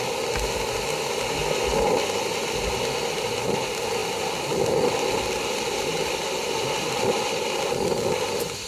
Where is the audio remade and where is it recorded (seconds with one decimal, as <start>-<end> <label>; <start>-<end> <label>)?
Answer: 0.0-8.7 recorded